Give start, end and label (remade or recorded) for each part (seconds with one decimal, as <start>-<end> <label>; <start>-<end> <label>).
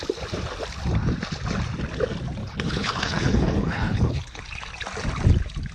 0.0-2.4 recorded; 2.4-4.4 remade; 4.4-5.7 recorded